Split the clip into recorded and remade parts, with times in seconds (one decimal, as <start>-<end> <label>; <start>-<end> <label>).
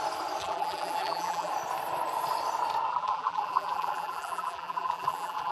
0.0-0.4 recorded; 0.4-1.5 remade; 1.5-2.9 recorded; 2.9-5.5 remade